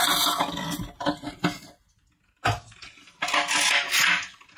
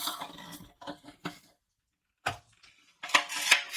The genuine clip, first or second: first